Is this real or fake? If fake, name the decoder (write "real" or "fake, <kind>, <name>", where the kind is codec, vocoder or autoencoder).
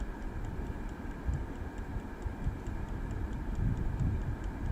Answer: real